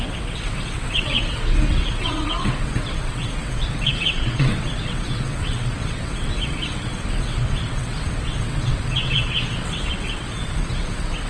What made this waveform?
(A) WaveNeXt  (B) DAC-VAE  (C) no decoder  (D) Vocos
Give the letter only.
A